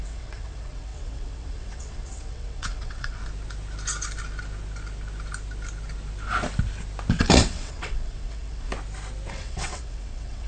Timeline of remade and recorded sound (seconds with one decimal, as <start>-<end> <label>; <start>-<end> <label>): 0.0-3.2 remade; 3.2-7.1 recorded; 7.1-8.7 remade; 8.7-9.3 recorded; 9.3-10.5 remade